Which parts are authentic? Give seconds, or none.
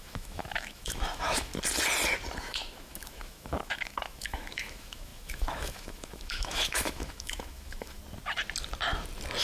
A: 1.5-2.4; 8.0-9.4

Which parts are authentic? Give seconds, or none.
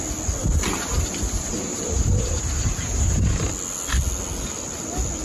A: 0.0-0.4; 3.5-5.2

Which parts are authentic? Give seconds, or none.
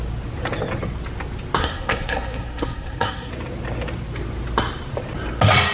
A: 0.0-1.6; 3.3-5.7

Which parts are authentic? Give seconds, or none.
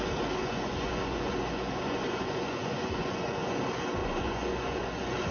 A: 0.0-0.4; 3.6-4.0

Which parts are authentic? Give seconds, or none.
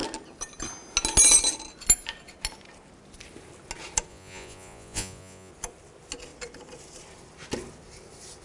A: 0.0-4.1; 5.5-8.4